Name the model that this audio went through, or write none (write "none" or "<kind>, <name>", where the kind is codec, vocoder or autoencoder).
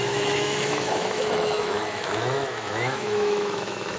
autoencoder, DAC-VAE